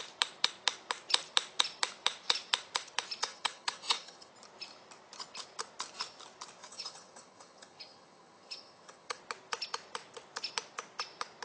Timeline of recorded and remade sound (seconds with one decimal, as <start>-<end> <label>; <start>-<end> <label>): 0.0-3.2 recorded; 3.2-4.3 remade; 4.3-6.6 recorded; 6.6-9.2 remade; 9.2-11.4 recorded